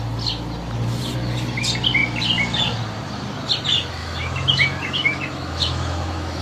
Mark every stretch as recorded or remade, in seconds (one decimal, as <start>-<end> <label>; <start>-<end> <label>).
0.0-4.0 recorded; 4.0-6.4 remade